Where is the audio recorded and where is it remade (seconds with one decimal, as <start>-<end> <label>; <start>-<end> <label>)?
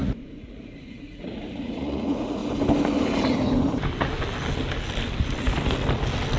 0.0-2.4 remade; 2.4-6.4 recorded